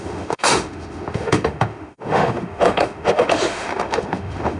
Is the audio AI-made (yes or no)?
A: yes